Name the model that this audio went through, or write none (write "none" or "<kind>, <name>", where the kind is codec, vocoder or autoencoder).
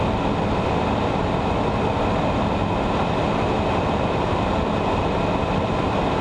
none